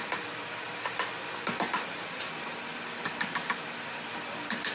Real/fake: real